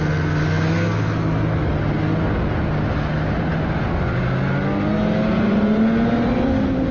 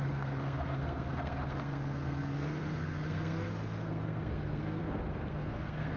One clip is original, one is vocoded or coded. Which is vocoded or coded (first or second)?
second